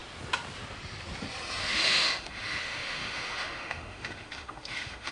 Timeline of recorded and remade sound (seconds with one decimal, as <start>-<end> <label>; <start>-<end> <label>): 0.0-1.6 recorded; 1.6-5.1 remade